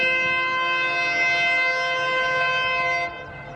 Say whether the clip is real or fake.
real